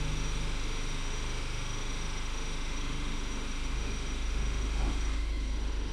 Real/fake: fake